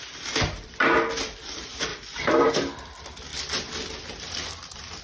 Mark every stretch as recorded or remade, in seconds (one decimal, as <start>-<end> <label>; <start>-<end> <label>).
0.0-1.9 recorded; 1.9-2.5 remade; 2.5-5.0 recorded